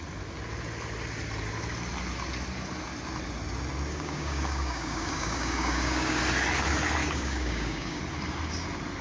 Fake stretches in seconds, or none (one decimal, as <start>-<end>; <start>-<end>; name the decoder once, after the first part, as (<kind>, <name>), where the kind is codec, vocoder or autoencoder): 3.9-6.2 (codec, DAC); 7.0-8.0